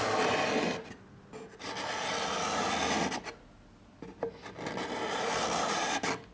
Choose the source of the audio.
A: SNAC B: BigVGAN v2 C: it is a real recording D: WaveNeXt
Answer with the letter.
C